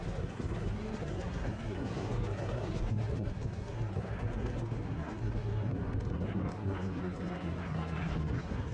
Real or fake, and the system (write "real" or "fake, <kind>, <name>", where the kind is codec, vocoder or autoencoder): fake, codec, SNAC